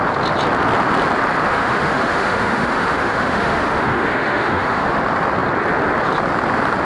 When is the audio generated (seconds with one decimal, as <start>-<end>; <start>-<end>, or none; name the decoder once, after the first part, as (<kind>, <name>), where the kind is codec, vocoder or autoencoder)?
1.5-5.0 (autoencoder, DAC-VAE)